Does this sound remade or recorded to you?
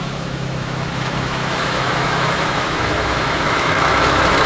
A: remade